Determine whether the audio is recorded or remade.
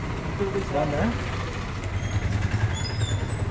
recorded